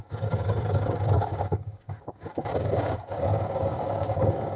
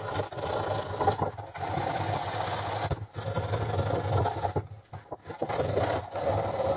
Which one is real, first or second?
second